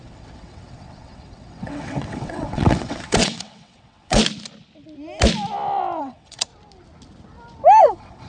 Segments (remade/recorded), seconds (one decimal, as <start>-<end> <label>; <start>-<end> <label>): 0.0-4.2 remade; 4.2-6.0 recorded; 6.0-6.5 remade; 6.5-7.8 recorded; 7.8-8.3 remade